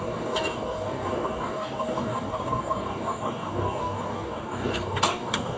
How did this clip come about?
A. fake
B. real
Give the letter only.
A